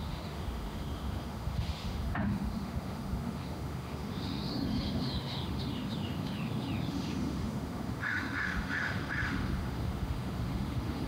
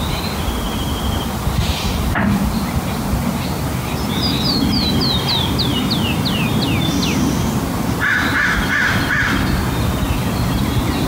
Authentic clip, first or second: second